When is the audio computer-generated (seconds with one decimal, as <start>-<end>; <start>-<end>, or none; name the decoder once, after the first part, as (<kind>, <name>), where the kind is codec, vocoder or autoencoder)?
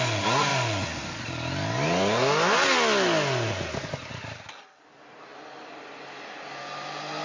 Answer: none